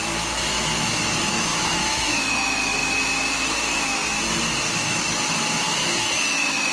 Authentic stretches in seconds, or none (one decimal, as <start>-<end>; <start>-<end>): 4.0-4.7